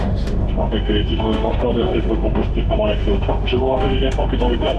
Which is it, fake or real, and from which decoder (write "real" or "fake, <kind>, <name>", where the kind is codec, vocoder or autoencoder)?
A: fake, autoencoder, DAC-VAE